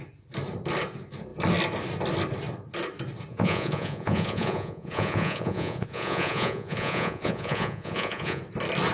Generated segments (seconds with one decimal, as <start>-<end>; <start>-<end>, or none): 3.3-8.4